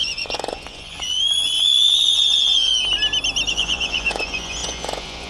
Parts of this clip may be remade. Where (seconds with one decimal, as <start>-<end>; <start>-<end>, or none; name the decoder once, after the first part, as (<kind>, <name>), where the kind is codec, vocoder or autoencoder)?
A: 0.0-2.7 (vocoder, Vocos); 3.5-5.3